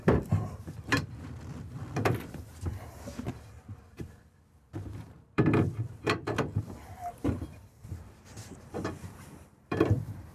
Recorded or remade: remade